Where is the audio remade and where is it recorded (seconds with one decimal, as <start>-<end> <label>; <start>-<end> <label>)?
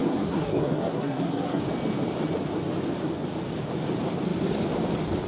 0.0-1.6 remade; 1.6-5.3 recorded